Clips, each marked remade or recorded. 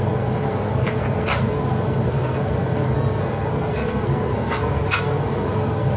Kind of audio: remade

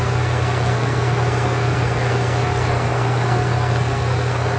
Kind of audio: remade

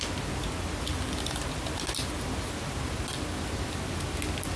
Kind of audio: recorded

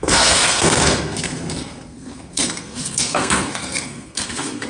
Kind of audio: remade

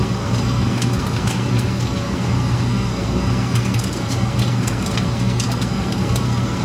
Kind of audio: remade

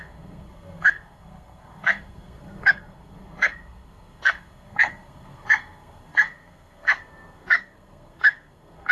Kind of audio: remade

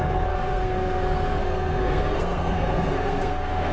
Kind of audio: remade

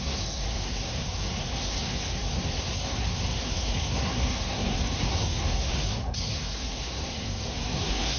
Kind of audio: remade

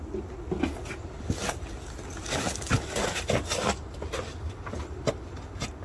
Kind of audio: recorded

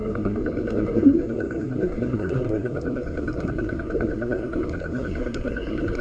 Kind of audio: remade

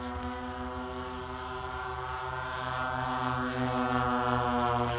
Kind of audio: recorded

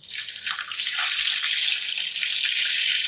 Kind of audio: recorded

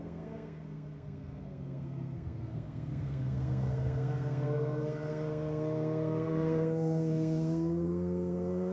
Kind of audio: remade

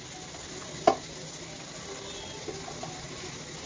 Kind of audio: recorded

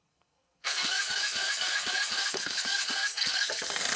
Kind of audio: remade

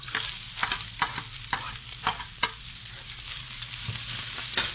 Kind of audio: recorded